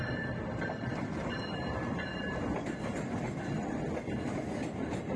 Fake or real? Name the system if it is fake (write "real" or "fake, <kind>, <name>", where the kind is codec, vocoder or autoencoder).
fake, vocoder, BigVGAN v2